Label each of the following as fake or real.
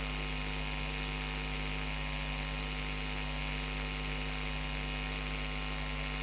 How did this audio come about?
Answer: real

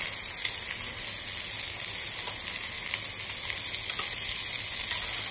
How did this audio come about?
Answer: real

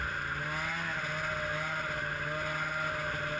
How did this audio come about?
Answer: real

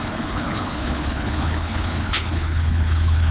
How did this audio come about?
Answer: fake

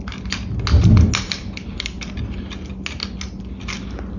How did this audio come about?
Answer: real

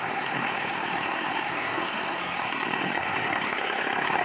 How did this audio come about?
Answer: fake